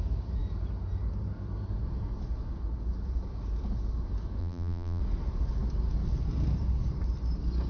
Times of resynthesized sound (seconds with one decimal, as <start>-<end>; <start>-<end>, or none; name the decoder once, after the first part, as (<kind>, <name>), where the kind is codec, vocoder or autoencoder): 4.4-5.0 (vocoder, BigVGAN v2)